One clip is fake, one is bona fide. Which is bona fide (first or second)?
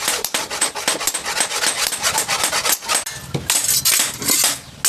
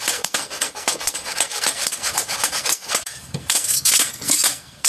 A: first